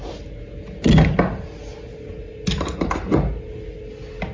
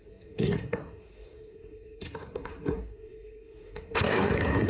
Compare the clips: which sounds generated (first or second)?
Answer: second